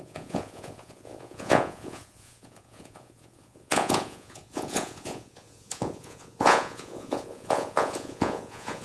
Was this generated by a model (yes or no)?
yes